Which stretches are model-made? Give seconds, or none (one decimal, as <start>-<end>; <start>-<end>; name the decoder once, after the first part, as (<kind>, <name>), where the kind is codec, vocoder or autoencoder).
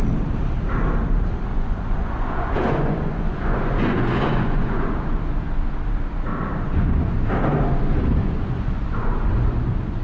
1.5-4.9 (vocoder, Vocos); 6.3-7.2; 8.2-10.0